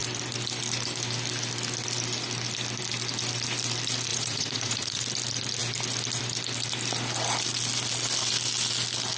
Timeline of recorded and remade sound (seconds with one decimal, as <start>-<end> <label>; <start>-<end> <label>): 0.0-4.1 recorded; 4.1-5.0 remade; 5.0-9.2 recorded